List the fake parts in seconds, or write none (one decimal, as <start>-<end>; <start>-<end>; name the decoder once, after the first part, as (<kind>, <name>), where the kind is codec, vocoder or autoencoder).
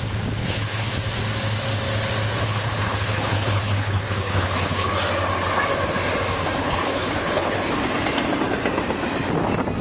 0.4-0.9 (codec, HILCodec); 2.4-4.9; 6.6-7.7